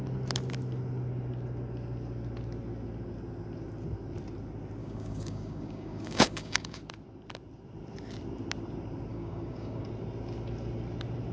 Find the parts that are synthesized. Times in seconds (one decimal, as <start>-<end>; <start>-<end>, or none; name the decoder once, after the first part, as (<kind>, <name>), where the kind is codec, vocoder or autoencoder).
4.8-6.8 (codec, DAC); 9.1-9.9